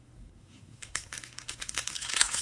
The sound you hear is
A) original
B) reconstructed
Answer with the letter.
B